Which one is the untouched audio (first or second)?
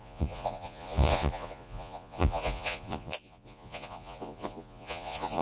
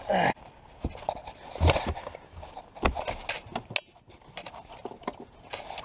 second